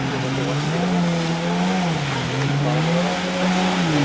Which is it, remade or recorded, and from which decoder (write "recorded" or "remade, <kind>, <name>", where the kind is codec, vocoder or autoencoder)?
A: recorded